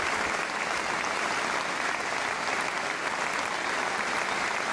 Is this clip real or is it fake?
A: real